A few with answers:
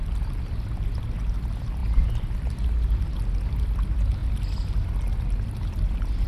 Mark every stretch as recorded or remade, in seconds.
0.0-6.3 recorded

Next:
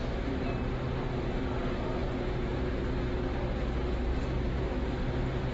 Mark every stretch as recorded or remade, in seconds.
0.0-5.5 recorded

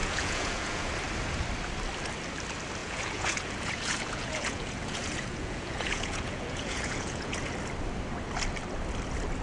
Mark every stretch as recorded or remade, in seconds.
0.0-0.9 remade; 0.9-2.8 recorded; 2.8-7.4 remade; 7.4-9.4 recorded

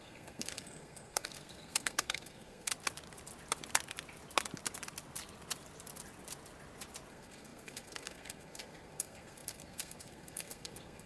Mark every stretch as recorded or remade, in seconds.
0.0-2.7 remade; 2.7-7.1 recorded; 7.1-11.1 remade

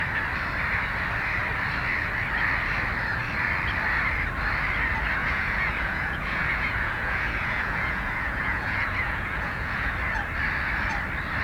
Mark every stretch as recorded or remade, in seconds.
0.0-5.2 recorded; 5.2-9.9 remade; 9.9-11.4 recorded